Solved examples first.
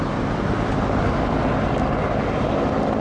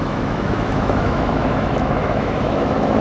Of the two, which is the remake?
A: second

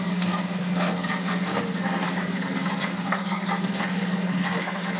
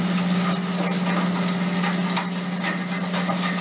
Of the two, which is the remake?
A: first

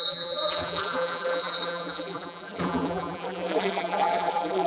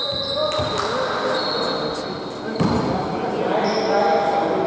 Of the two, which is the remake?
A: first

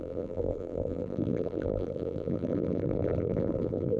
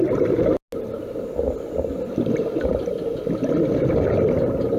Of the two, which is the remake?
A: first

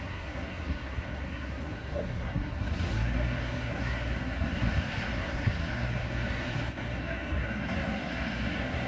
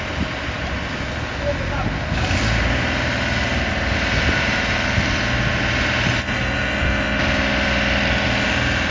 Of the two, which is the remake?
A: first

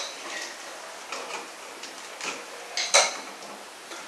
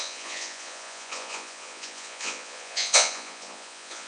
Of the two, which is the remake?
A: second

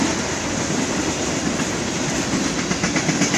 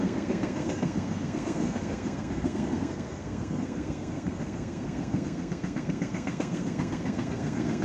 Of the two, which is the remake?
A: second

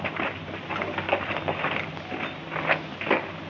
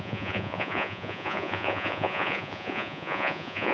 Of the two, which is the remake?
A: second